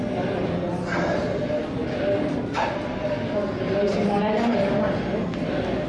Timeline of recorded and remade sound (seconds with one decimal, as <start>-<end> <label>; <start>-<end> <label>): 0.0-0.7 recorded; 0.7-1.2 remade; 1.2-1.8 recorded; 1.8-5.3 remade; 5.3-5.9 recorded